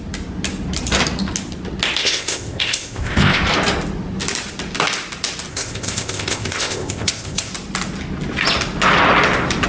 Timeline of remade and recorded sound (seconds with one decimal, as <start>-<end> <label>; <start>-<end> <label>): 0.0-2.0 recorded; 2.0-3.4 remade; 3.4-5.5 recorded; 5.5-7.5 remade; 7.5-9.7 recorded